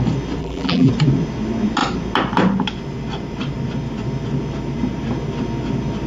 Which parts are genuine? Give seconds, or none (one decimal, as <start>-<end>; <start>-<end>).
0.0-0.4; 0.9-6.1

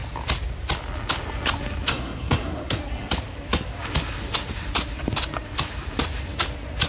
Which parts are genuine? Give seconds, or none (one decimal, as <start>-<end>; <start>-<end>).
0.0-1.9; 2.8-6.9

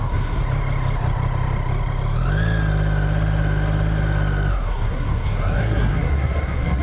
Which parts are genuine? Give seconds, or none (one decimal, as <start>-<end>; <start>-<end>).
0.4-4.5